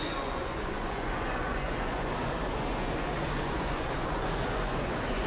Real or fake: fake